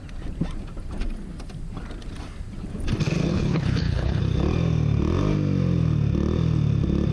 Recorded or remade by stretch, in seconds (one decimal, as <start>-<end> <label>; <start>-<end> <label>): 0.0-3.3 recorded; 3.3-4.2 remade; 4.2-7.1 recorded